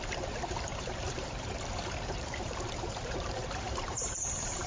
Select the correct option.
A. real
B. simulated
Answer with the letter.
B